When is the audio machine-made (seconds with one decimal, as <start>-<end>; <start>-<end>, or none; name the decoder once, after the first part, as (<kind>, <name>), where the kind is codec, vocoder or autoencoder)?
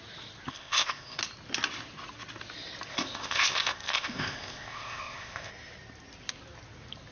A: 0.5-1.2 (codec, ZipCodec); 2.9-5.5